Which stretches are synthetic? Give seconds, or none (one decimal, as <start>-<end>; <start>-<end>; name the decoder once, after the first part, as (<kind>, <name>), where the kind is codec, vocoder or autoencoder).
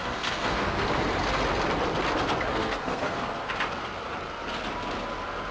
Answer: 0.0-0.9 (codec, SNAC); 2.5-3.5